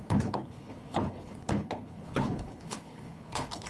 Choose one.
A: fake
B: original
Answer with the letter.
A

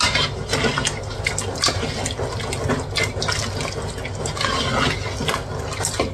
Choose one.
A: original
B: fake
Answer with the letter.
A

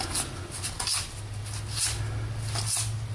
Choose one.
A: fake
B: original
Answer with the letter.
B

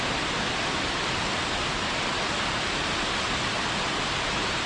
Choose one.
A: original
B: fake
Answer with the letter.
A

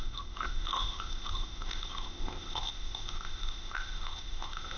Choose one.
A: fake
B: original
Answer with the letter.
A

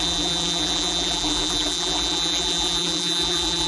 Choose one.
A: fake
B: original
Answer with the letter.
A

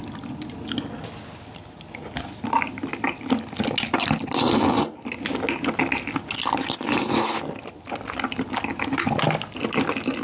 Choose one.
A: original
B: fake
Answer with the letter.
A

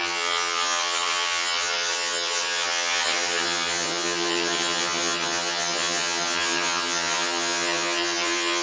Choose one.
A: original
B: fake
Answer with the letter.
B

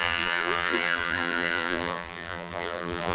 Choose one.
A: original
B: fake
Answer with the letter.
B